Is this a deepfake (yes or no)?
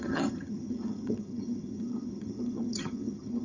yes